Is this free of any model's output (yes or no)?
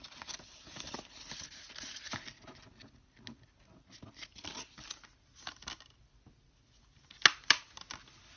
yes